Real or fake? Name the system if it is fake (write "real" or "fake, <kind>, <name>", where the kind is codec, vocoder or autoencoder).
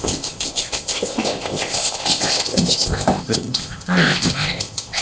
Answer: fake, codec, ZipCodec